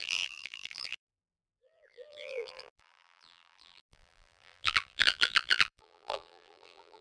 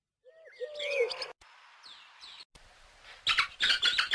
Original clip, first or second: second